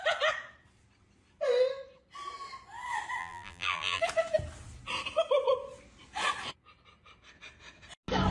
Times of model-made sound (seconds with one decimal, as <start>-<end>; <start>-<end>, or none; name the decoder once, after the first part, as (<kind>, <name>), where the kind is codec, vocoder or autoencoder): 3.2-4.0 (vocoder, BigVGAN v2)